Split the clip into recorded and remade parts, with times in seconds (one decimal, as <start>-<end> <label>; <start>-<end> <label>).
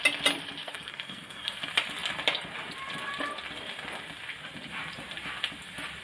0.0-0.6 recorded; 0.6-1.6 remade; 1.6-6.0 recorded